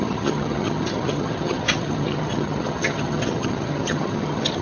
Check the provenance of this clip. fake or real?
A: fake